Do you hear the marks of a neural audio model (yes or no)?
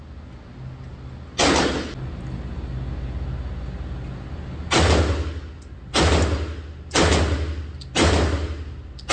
no